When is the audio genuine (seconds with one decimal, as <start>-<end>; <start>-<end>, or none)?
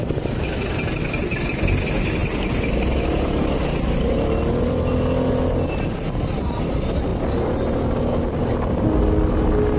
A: 0.0-9.8